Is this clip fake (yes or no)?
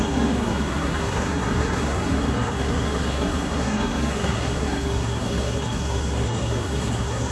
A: yes